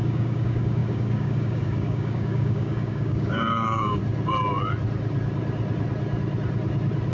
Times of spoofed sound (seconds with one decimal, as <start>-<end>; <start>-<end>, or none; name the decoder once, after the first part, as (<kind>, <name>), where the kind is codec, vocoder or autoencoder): 0.0-4.0 (codec, DAC)